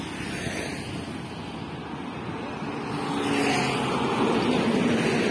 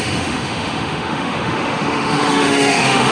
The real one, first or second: first